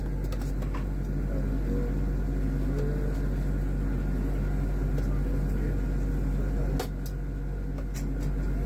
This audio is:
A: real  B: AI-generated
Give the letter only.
A